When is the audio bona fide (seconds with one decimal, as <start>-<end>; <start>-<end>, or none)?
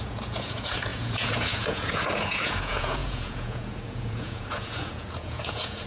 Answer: none